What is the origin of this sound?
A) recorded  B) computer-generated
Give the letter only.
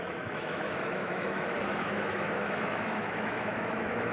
B